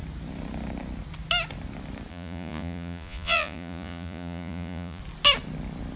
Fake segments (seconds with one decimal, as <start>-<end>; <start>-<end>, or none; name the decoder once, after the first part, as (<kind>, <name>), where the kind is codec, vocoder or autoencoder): 2.1-5.0 (vocoder, Vocos)